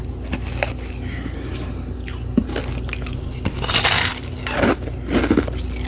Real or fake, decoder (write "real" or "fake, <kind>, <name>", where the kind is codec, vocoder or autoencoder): real